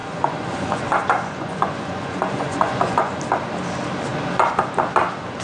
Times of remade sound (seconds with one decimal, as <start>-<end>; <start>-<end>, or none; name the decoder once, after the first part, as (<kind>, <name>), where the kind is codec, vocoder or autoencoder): 0.0-3.2 (vocoder, Vocos)